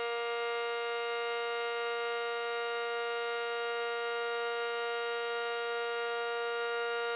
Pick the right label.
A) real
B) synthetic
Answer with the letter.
A